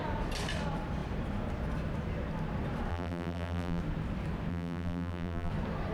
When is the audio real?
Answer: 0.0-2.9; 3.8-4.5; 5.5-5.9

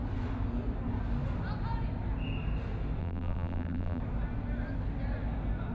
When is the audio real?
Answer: 0.0-3.0; 4.0-5.7